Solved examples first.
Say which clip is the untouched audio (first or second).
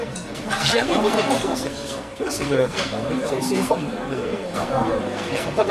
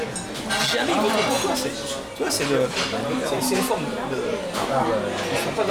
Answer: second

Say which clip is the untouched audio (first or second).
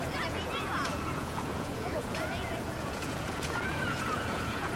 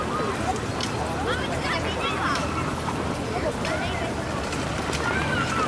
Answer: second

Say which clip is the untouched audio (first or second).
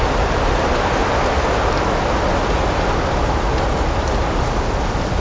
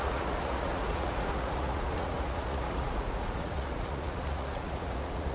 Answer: first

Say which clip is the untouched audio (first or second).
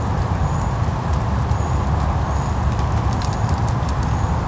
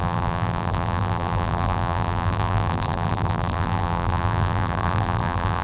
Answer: first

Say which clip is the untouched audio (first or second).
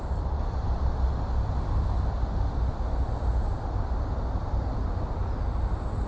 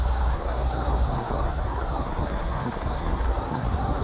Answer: first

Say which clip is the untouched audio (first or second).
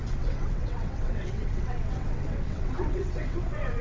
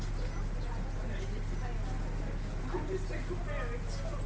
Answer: second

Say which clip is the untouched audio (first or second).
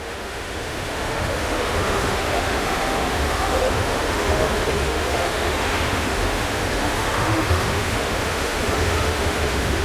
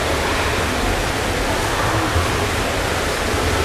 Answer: second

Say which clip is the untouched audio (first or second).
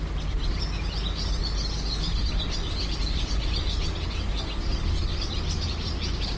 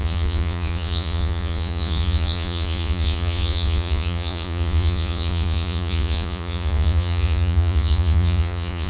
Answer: first